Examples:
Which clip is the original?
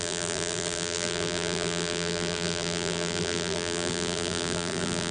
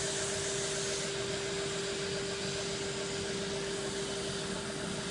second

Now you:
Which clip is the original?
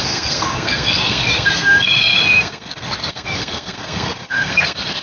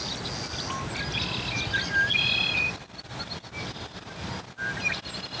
second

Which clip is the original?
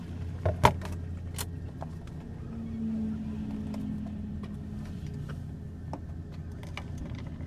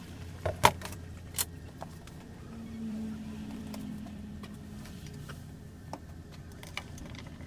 first